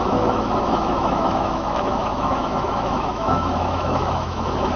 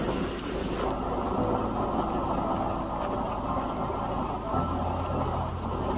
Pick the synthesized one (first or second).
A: first